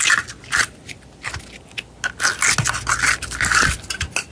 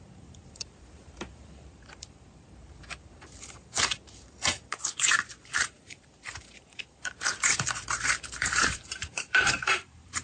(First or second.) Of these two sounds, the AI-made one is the second